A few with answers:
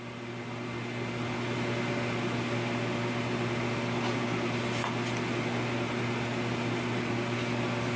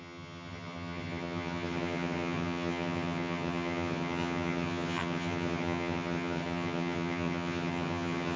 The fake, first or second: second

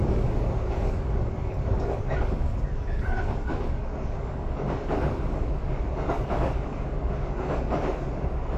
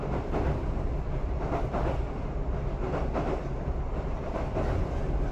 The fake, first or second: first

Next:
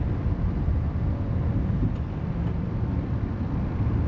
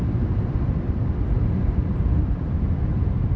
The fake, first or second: second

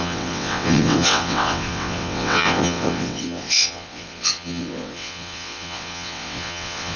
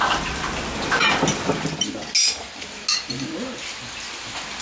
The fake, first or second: first